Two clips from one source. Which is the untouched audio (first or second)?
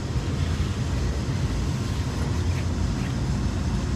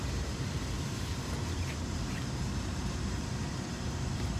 first